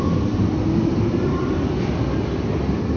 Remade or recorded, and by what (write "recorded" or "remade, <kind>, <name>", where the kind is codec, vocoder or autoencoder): recorded